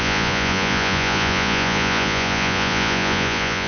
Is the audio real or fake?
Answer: fake